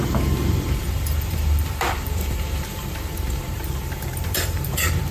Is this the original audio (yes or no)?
no